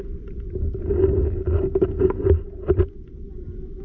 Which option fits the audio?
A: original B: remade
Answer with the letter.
A